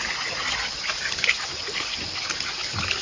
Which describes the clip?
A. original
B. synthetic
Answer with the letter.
B